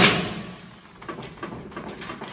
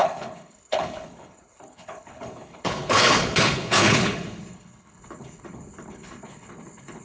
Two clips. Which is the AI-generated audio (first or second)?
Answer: second